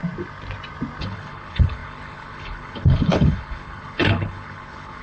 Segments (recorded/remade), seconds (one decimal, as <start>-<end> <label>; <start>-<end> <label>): 0.0-1.0 recorded; 1.0-5.0 remade